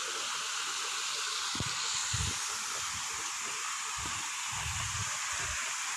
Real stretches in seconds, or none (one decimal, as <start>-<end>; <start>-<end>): 0.0-6.0